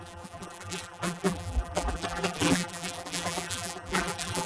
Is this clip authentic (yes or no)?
no